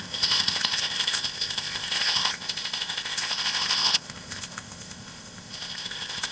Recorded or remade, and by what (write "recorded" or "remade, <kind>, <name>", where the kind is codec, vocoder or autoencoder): remade, codec, ZipCodec